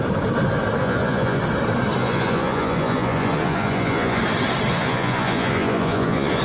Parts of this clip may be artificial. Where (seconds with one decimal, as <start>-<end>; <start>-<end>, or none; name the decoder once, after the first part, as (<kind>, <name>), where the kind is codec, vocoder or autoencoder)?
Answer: 0.8-1.4 (vocoder, Vocos); 2.0-4.2; 4.7-6.4